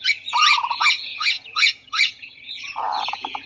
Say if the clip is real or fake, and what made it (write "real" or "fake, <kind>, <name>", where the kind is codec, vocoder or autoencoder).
fake, vocoder, Vocos